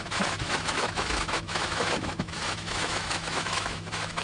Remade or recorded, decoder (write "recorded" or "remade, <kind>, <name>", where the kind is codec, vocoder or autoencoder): remade, autoencoder, DAC-VAE